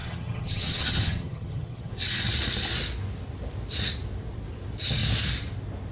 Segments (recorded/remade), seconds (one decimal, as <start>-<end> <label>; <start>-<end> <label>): 0.0-1.9 remade; 1.9-5.9 recorded